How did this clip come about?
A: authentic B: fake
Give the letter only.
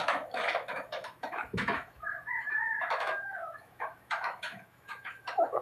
B